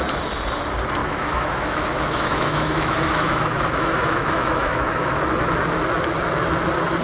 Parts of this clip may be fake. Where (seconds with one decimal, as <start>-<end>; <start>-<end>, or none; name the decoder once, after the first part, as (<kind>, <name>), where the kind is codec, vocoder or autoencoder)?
1.0-5.2 (autoencoder, DAC-VAE)